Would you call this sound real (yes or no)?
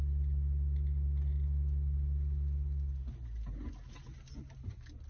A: yes